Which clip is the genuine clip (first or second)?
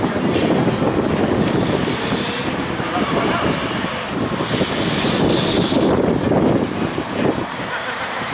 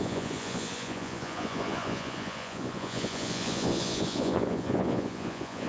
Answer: first